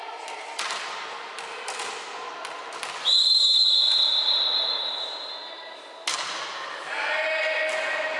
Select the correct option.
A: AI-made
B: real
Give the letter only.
B